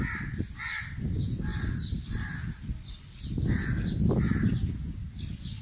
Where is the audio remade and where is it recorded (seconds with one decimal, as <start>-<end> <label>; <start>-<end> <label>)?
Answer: 0.0-5.6 recorded